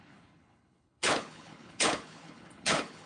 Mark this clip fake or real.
fake